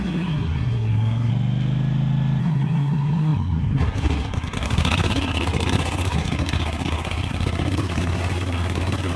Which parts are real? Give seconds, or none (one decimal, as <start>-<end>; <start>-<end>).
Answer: 1.3-2.4